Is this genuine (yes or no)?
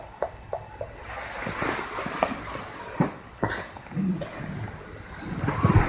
yes